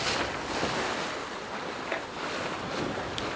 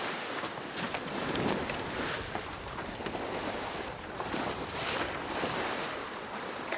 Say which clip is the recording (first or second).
first